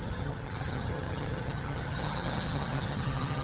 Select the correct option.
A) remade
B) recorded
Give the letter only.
A